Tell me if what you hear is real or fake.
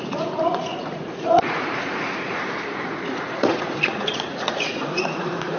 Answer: fake